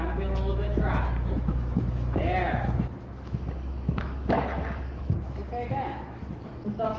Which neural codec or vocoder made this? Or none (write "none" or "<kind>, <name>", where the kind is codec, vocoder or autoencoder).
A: autoencoder, DAC-VAE